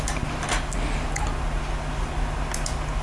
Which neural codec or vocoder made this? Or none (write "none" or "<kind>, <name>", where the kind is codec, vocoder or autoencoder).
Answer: none